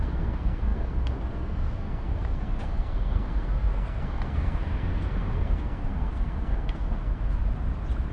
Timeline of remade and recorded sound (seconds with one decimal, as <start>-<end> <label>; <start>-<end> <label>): 0.0-7.4 remade; 7.4-8.1 recorded